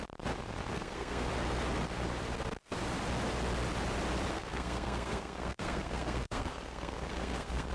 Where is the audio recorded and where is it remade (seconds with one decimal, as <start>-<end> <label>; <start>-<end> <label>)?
0.0-0.7 recorded; 0.7-1.3 remade; 1.3-4.3 recorded; 4.3-7.7 remade